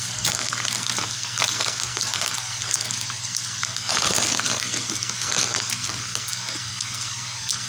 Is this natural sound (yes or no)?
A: no